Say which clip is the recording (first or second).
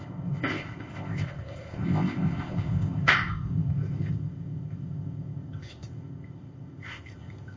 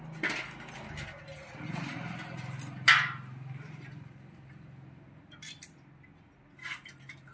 second